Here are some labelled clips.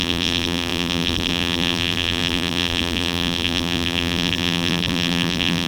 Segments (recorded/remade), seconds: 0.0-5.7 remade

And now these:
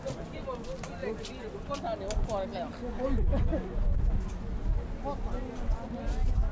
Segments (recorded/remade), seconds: 0.0-6.5 recorded

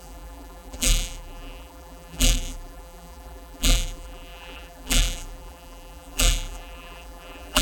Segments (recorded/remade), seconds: 0.0-7.6 remade

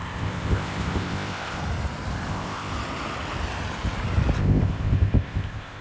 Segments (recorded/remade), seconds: 0.0-1.6 remade; 1.6-2.3 recorded; 2.3-2.7 remade; 2.7-4.4 recorded; 4.4-5.8 remade

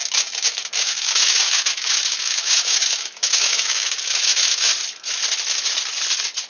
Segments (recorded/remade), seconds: 0.0-4.7 remade; 4.7-6.5 recorded

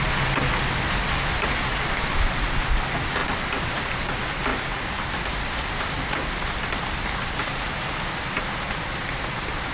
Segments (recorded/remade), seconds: 0.0-3.2 recorded; 3.2-4.1 remade; 4.1-4.5 recorded; 4.5-5.1 remade; 5.1-9.7 recorded

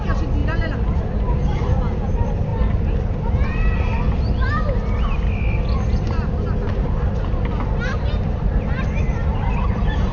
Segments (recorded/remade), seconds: 0.0-0.4 recorded; 0.4-1.8 remade; 1.8-10.1 recorded